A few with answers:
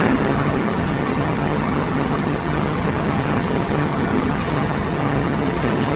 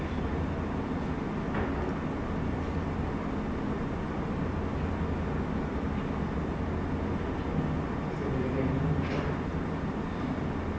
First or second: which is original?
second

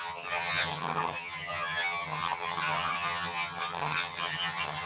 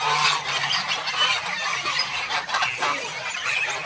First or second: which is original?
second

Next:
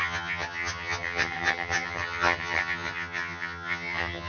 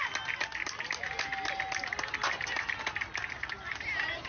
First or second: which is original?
second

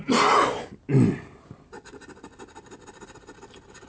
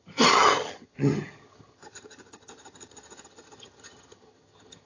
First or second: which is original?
first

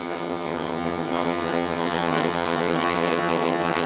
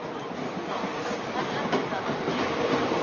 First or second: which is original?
second